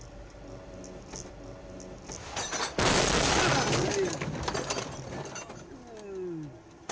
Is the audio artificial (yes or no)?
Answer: no